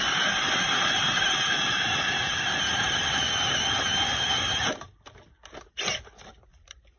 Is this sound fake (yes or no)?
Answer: no